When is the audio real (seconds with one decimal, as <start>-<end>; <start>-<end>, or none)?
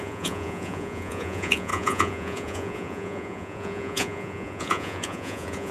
none